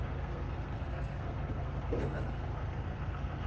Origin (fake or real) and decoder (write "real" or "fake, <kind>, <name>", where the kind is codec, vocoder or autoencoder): fake, codec, SNAC